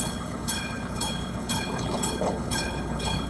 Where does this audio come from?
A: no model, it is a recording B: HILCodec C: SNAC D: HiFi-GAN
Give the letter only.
B